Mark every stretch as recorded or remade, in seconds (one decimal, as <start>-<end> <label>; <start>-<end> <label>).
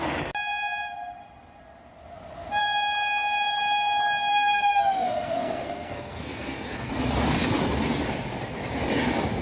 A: 0.0-4.3 recorded; 4.3-6.9 remade; 6.9-9.4 recorded